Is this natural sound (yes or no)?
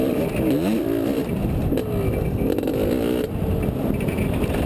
yes